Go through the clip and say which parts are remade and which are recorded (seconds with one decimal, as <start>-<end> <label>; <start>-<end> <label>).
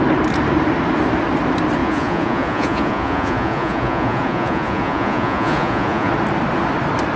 0.0-1.8 recorded; 1.8-6.1 remade; 6.1-7.2 recorded